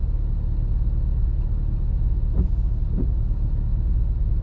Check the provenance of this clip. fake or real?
real